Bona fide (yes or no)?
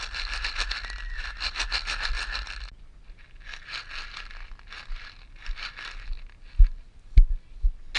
yes